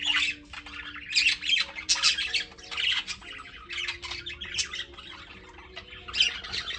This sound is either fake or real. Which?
real